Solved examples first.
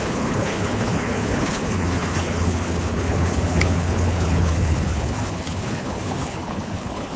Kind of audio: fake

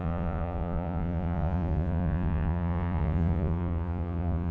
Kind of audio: fake